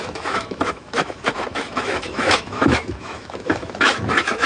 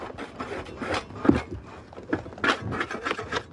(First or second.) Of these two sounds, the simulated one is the first